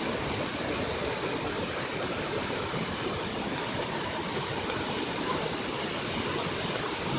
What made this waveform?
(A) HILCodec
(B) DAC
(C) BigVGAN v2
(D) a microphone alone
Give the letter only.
D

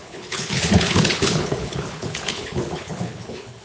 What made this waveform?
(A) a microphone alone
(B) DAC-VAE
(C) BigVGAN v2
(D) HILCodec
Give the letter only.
D